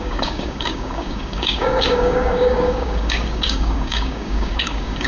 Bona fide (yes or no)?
no